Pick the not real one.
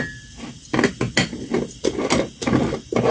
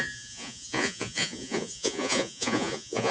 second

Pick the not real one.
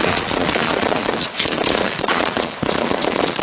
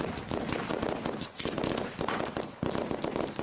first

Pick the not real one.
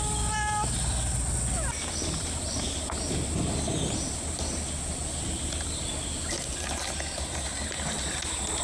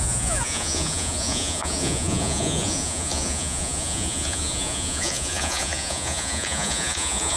second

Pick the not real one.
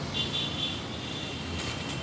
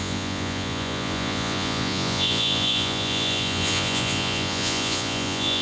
second